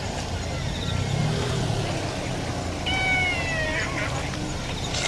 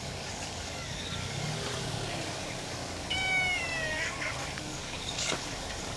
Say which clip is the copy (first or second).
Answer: second